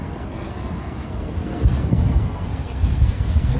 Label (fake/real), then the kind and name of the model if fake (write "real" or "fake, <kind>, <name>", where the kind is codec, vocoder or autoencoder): fake, codec, SNAC